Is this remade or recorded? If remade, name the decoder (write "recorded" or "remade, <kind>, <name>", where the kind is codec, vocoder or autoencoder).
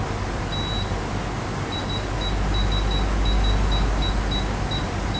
recorded